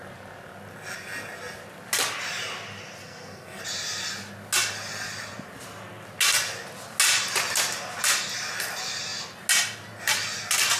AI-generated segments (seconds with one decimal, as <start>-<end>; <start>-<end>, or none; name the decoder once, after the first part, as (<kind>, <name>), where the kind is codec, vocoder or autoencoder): 3.0-3.6 (codec, SNAC)